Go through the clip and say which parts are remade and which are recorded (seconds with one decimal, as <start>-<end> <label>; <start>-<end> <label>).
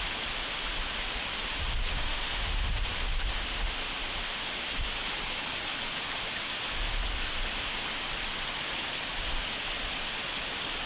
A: 0.0-1.9 recorded; 1.9-2.7 remade; 2.7-3.3 recorded; 3.3-4.7 remade; 4.7-10.9 recorded